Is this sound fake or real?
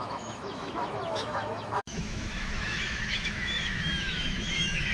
fake